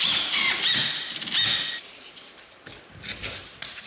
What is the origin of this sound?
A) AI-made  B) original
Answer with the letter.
B